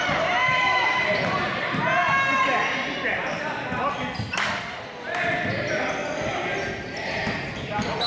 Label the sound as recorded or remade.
recorded